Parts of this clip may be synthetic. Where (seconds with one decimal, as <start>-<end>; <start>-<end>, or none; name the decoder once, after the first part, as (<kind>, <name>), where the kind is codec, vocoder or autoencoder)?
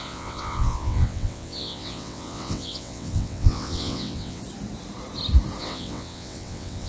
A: 0.0-4.4 (vocoder, WaveNeXt); 5.6-6.9